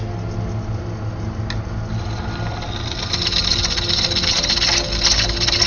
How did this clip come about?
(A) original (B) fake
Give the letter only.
A